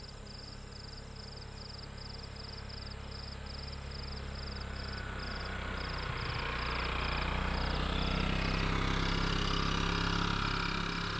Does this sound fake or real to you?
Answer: real